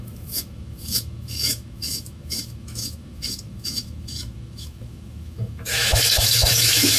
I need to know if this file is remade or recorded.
remade